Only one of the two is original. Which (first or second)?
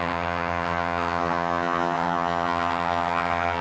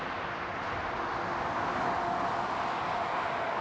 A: second